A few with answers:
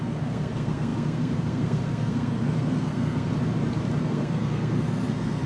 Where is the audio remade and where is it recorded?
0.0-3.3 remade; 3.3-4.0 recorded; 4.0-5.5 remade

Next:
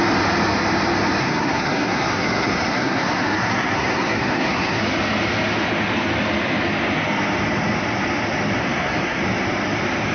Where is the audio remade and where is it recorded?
0.0-1.2 recorded; 1.2-4.8 remade; 4.8-8.6 recorded; 8.6-9.2 remade; 9.2-10.1 recorded

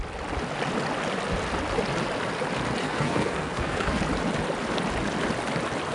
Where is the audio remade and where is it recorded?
0.0-2.8 recorded; 2.8-4.0 remade; 4.0-5.9 recorded

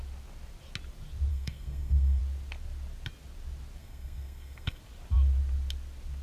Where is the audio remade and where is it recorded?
0.0-1.3 recorded; 1.3-2.2 remade; 2.2-3.8 recorded; 3.8-4.8 remade; 4.8-6.2 recorded

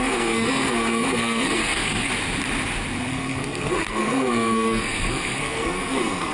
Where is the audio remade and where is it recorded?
0.0-2.1 remade; 2.1-3.1 recorded; 3.1-6.3 remade